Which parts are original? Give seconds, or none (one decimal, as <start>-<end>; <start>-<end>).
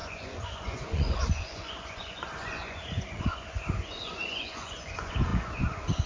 none